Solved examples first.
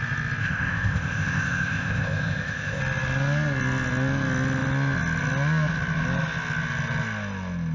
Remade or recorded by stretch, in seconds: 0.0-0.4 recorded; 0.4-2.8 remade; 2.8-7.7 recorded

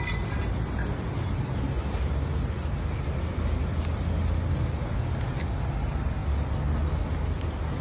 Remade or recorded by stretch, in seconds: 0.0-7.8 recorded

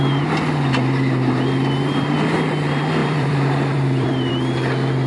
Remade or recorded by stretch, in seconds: 0.0-3.0 recorded; 3.0-4.3 remade; 4.3-5.1 recorded

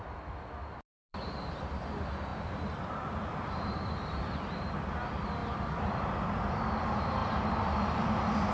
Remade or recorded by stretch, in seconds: 0.0-0.6 recorded; 0.6-1.8 remade; 1.8-2.3 recorded; 2.3-4.7 remade; 4.7-5.4 recorded; 5.4-6.0 remade; 6.0-7.2 recorded; 7.2-8.0 remade; 8.0-8.5 recorded

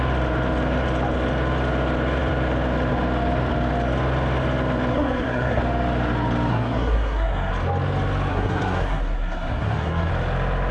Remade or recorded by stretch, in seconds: 0.0-4.9 recorded; 4.9-5.6 remade; 5.6-6.5 recorded; 6.5-7.5 remade; 7.5-8.3 recorded; 8.3-10.1 remade; 10.1-10.7 recorded

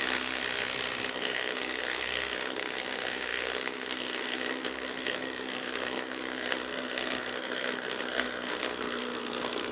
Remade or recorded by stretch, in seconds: 0.0-0.4 remade; 0.4-1.1 recorded; 1.1-9.7 remade

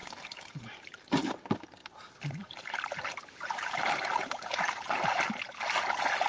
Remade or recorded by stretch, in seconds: 0.0-1.3 remade; 1.3-1.8 recorded; 1.8-5.4 remade; 5.4-6.3 recorded